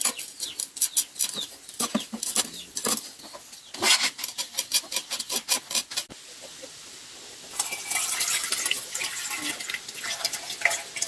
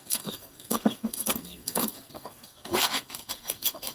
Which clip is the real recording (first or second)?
first